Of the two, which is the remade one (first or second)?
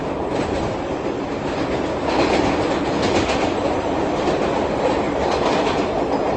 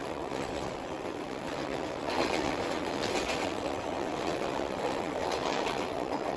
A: second